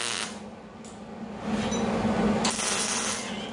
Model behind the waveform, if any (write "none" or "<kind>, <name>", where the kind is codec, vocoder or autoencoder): none